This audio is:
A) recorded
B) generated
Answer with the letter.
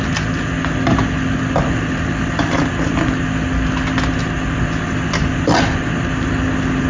A